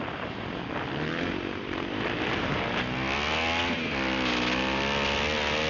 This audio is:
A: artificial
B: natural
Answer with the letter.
B